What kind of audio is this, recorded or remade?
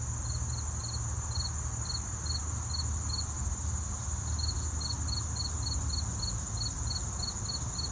recorded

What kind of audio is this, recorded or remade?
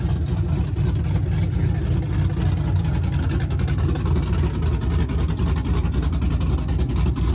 recorded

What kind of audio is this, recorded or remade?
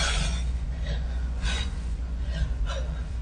remade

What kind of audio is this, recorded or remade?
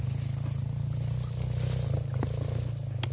recorded